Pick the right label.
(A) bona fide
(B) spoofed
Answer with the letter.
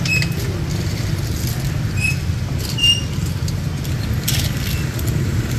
A